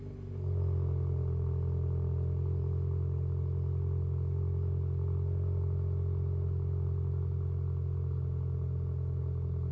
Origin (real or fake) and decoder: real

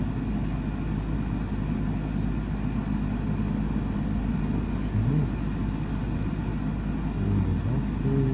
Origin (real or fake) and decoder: real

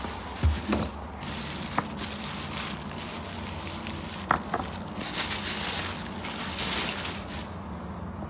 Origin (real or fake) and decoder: real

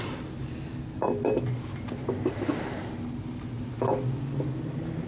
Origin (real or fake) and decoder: real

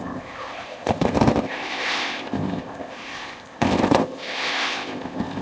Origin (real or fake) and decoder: fake, codec, ZipCodec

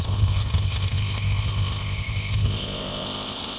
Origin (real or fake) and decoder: fake, codec, ZipCodec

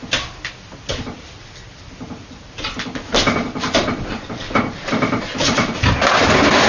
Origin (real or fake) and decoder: real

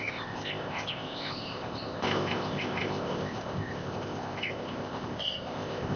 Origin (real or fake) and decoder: fake, codec, ZipCodec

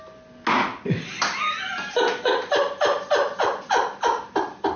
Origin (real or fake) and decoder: real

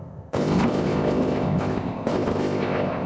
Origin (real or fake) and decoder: fake, codec, ZipCodec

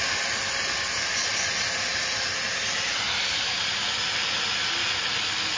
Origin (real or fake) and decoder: real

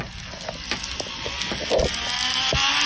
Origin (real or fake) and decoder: real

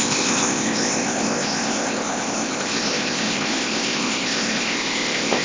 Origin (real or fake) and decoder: fake, codec, ZipCodec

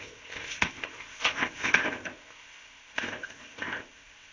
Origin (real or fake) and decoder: fake, codec, ZipCodec